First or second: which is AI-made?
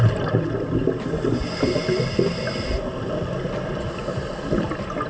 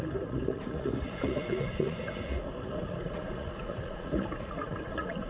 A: second